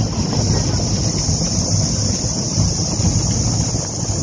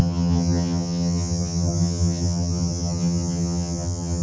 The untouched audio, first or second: first